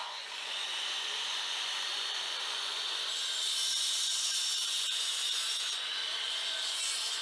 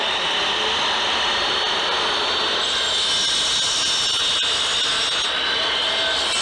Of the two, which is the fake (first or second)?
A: first